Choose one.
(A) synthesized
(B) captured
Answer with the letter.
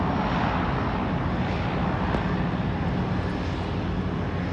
B